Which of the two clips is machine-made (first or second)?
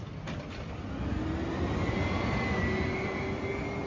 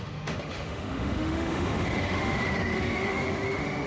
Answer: second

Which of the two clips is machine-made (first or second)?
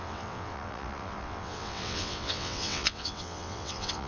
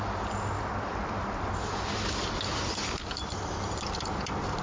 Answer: first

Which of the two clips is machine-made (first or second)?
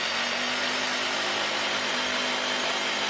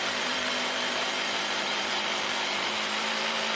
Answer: second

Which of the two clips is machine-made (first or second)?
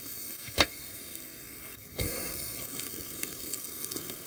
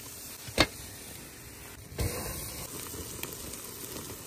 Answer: first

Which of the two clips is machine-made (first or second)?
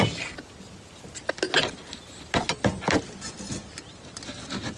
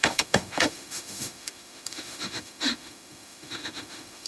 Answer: second